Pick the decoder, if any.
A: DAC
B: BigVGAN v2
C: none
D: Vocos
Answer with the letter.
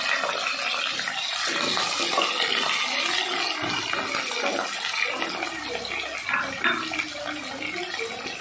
C